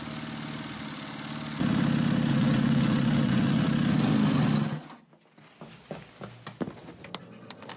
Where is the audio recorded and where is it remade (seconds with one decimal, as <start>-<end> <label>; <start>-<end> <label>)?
0.0-2.3 recorded; 2.3-3.6 remade; 3.6-7.8 recorded